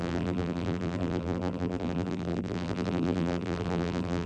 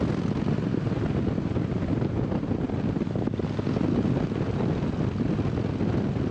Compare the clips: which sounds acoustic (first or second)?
second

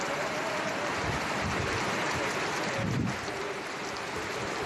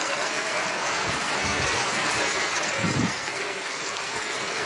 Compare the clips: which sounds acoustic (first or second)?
first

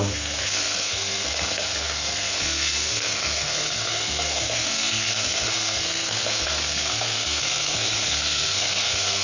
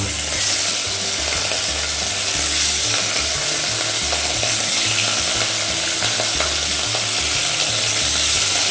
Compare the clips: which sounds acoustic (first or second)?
second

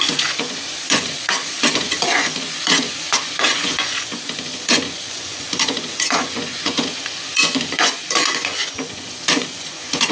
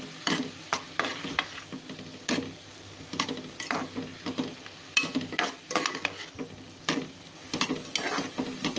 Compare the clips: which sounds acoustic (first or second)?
second